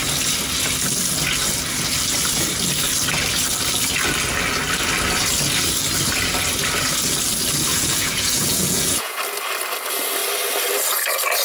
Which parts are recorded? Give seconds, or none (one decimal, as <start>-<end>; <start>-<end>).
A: 0.0-7.7; 9.2-11.4